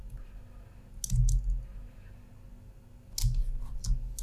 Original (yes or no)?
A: yes